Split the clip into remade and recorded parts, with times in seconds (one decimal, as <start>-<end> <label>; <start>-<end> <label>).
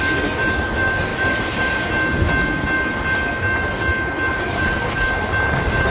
0.0-1.1 recorded; 1.1-1.9 remade; 1.9-4.3 recorded; 4.3-5.0 remade; 5.0-5.9 recorded